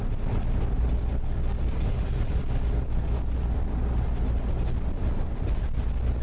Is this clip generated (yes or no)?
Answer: no